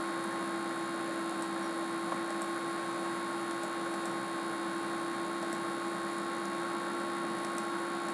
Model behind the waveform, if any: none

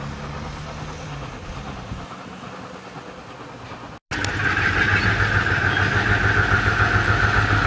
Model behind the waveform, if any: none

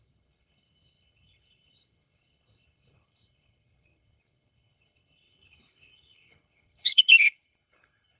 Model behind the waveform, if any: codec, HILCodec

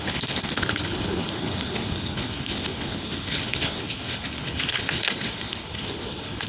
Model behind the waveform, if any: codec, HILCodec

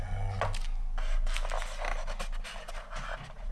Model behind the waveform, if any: none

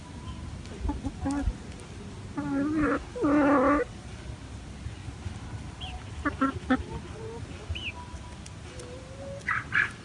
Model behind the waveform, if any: none